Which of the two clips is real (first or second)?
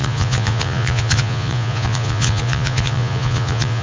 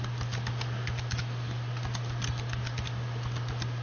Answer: second